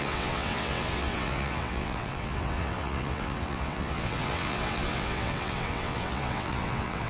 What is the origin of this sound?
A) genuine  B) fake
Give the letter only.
B